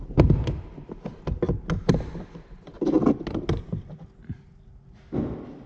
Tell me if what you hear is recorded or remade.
recorded